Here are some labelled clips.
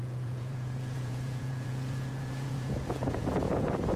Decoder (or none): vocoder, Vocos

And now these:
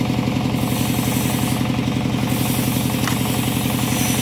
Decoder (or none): none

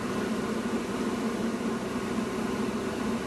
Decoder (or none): none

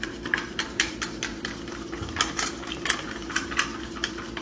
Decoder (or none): vocoder, BigVGAN v2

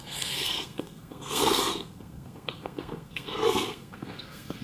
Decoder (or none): codec, SNAC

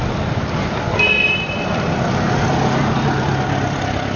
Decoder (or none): none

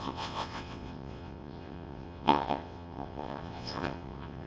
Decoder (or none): vocoder, WaveNeXt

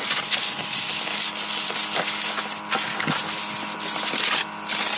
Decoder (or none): none